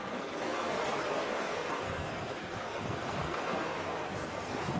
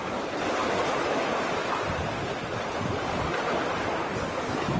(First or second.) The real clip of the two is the second